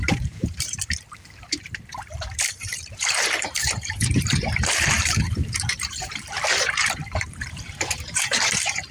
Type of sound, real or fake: fake